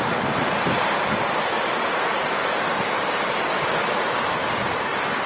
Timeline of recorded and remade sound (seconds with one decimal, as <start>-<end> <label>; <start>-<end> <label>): 0.0-5.3 remade